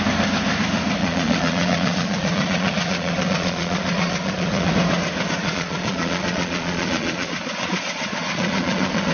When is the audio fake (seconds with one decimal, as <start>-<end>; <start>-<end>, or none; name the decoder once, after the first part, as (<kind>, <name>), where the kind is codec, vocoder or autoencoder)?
1.0-4.7 (vocoder, Vocos); 5.4-9.1